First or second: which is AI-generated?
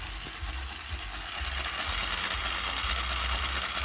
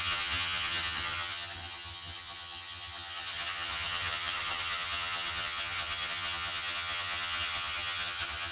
second